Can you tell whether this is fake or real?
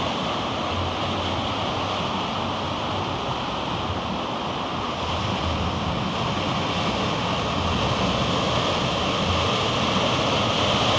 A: real